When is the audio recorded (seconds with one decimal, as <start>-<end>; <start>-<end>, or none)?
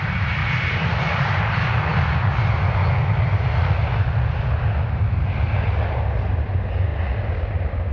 0.0-0.4; 1.4-7.9